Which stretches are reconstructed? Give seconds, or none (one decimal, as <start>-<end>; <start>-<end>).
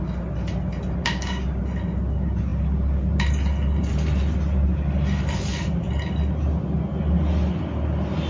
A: 1.0-1.6